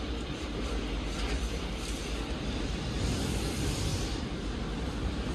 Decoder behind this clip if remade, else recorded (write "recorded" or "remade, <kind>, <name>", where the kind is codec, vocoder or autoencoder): remade, vocoder, BigVGAN v2